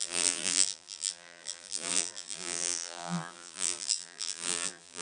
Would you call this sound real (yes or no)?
no